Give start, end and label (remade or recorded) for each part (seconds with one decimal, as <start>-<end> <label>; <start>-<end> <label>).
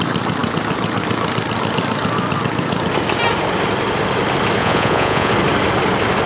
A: 0.0-4.6 recorded; 4.6-5.3 remade; 5.3-6.3 recorded